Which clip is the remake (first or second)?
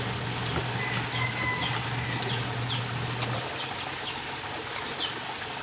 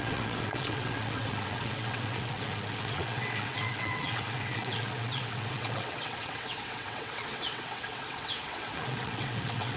second